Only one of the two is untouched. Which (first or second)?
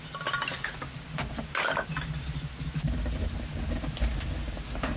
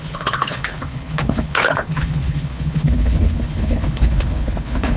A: first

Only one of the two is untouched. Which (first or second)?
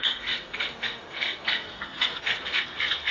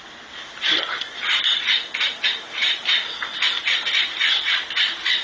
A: second